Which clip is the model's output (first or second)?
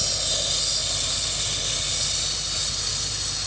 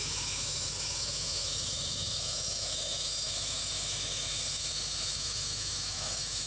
second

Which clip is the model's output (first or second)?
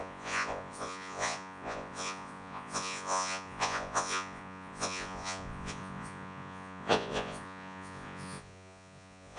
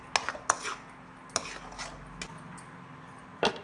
first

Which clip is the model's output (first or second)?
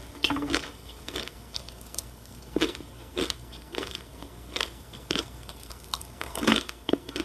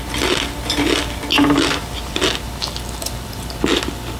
first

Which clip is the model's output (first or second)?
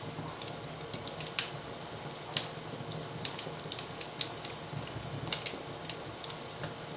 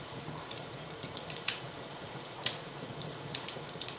second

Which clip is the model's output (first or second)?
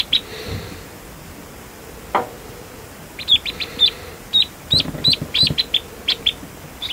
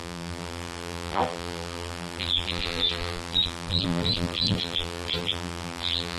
second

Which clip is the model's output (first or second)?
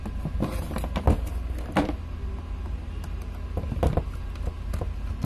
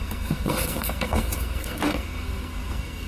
second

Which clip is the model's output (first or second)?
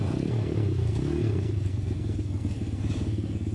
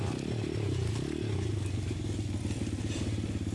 first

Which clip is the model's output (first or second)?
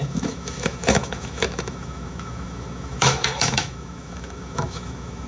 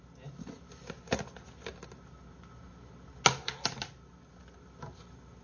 first